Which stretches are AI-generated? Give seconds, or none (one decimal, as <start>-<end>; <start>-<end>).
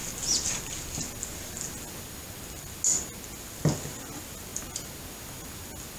none